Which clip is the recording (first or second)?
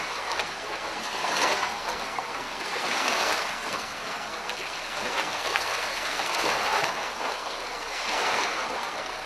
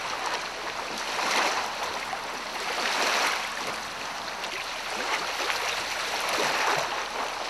second